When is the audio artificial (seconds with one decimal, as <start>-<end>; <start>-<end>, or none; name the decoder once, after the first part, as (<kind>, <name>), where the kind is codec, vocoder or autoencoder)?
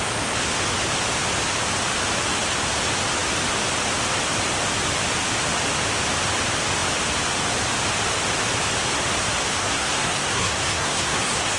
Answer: 9.6-11.6 (codec, SNAC)